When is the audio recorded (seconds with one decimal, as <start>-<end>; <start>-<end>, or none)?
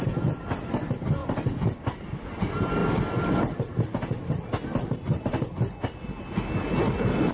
0.0-7.3